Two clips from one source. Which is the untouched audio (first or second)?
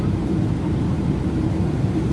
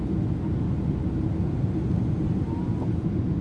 second